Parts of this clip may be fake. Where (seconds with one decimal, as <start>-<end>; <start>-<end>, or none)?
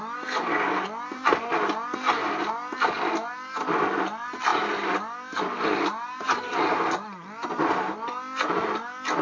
none